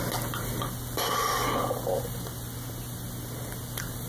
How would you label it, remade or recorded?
recorded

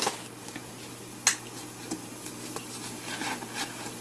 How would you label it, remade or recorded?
recorded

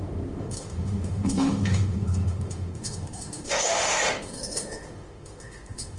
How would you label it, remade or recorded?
remade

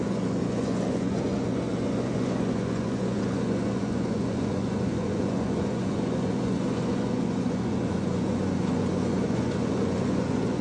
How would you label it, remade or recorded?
remade